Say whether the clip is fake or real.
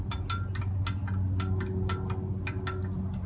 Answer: real